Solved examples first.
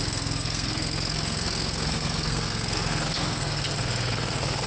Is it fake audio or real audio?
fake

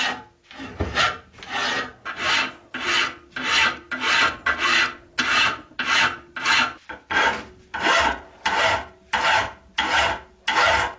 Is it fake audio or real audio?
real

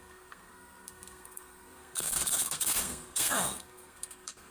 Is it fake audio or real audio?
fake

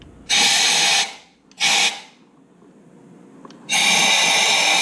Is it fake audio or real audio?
real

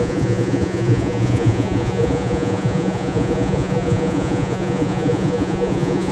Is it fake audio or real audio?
fake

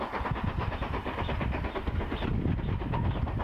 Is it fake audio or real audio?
real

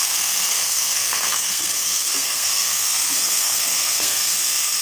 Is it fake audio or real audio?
fake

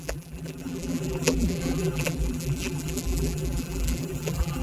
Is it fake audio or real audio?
fake